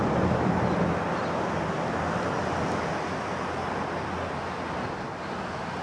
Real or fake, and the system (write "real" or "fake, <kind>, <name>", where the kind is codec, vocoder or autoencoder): real